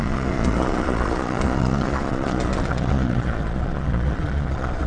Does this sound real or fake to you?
fake